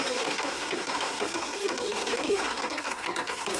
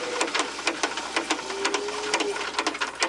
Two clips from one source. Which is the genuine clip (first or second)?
second